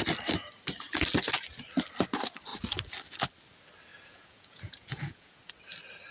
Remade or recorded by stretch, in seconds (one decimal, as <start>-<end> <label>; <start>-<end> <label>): 0.0-3.9 recorded; 3.9-5.5 remade; 5.5-6.1 recorded